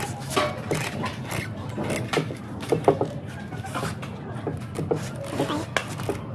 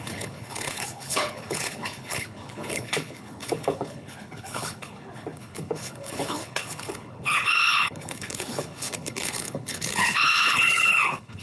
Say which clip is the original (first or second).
first